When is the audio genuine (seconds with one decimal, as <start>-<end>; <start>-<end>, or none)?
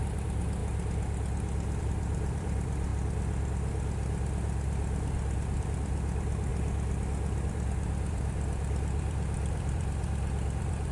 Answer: 0.6-1.8; 2.9-5.6; 6.5-7.5